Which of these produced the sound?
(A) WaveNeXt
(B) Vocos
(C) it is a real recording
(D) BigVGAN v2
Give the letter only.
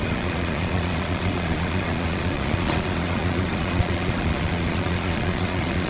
B